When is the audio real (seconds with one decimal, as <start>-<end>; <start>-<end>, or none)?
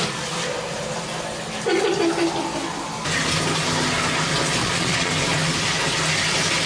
0.0-4.6; 5.1-6.7